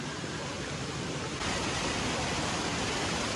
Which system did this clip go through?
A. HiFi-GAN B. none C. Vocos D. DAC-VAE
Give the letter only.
B